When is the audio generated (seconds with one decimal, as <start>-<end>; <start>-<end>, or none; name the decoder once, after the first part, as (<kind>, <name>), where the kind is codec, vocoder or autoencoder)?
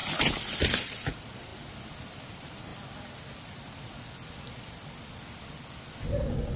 0.0-1.5 (vocoder, BigVGAN v2); 2.3-2.7; 4.5-6.6